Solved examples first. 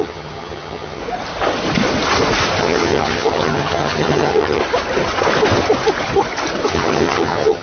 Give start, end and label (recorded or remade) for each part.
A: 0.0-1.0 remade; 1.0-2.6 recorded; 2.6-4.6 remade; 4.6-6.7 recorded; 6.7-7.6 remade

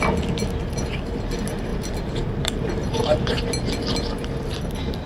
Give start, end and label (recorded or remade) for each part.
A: 0.0-1.7 recorded; 1.7-3.3 remade; 3.3-5.1 recorded

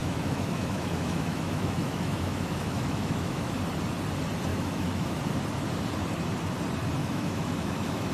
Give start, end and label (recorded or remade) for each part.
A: 0.0-3.5 remade; 3.5-4.5 recorded; 4.5-5.2 remade; 5.2-7.0 recorded; 7.0-8.1 remade